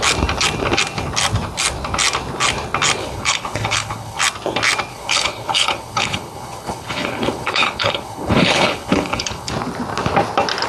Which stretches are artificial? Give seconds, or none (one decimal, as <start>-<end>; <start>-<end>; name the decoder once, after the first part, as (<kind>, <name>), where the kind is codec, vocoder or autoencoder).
3.0-4.2 (codec, HILCodec); 4.9-9.5